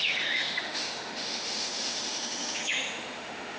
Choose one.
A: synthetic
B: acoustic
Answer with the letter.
A